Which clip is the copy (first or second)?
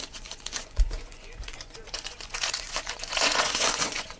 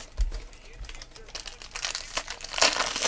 first